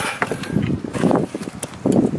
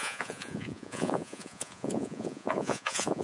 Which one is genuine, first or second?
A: first